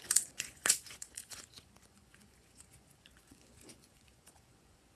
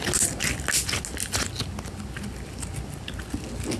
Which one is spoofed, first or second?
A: first